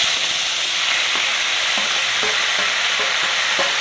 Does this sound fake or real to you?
real